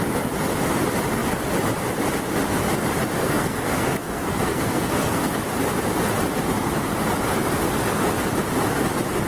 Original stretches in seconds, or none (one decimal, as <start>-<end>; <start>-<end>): 0.0-3.2; 5.4-9.3